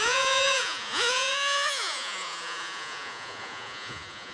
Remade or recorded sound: remade